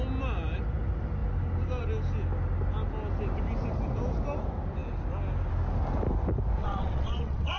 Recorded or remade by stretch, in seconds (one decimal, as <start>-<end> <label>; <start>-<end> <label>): 0.0-6.6 recorded; 6.6-7.6 remade